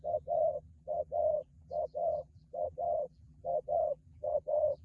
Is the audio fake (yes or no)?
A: yes